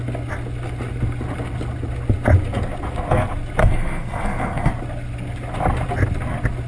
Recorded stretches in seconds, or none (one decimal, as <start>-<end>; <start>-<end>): 0.0-3.6; 4.7-6.7